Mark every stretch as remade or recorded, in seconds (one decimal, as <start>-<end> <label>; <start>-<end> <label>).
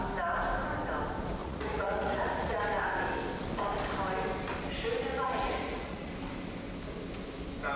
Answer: 0.0-1.4 recorded; 1.4-2.6 remade; 2.6-5.1 recorded; 5.1-6.1 remade; 6.1-7.8 recorded